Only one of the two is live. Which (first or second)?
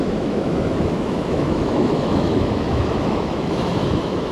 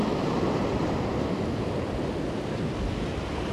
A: second